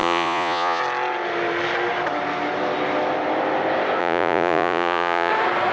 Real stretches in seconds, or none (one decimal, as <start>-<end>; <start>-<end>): 0.8-4.0; 5.3-5.7